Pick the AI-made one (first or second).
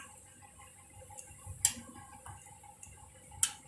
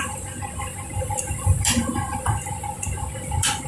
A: second